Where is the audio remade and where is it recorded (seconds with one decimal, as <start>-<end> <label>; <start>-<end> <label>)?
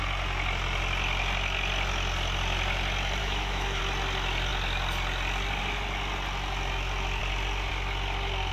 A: 0.0-3.2 recorded; 3.2-3.8 remade; 3.8-8.5 recorded